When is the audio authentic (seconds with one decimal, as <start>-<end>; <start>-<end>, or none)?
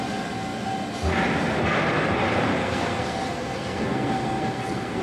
0.0-2.5